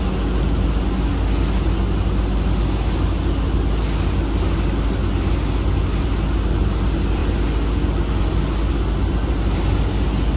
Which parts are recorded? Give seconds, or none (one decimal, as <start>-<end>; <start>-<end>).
0.0-10.4